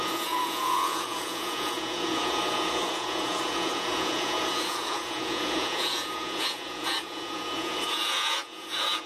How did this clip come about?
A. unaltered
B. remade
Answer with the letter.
B